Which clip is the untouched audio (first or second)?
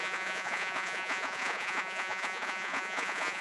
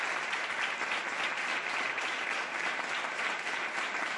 second